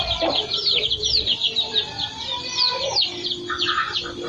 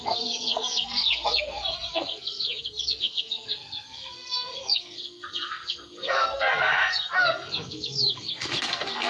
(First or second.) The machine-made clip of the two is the second